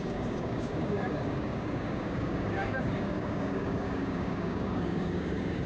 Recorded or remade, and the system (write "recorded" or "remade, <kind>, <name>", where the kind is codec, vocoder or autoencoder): remade, codec, DAC